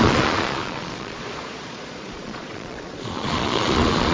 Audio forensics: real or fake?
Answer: fake